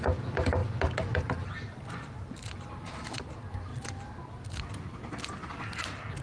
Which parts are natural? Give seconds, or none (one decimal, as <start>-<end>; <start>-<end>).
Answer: 0.0-6.2